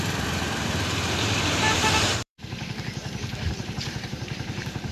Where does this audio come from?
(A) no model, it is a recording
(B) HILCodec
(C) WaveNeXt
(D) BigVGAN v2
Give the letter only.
D